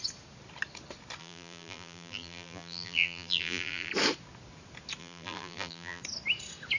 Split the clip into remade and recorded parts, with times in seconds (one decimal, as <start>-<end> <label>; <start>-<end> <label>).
0.0-1.2 recorded; 1.2-3.9 remade; 3.9-5.0 recorded; 5.0-6.0 remade; 6.0-6.8 recorded